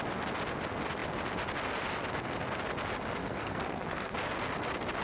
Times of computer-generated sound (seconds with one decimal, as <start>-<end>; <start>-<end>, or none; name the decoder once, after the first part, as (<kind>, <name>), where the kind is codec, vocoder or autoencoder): 3.2-4.1 (codec, SNAC)